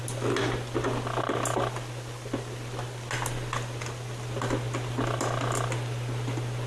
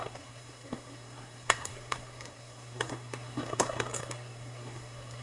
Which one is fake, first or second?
second